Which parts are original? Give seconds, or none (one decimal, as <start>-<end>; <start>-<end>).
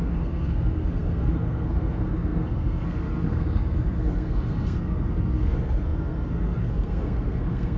none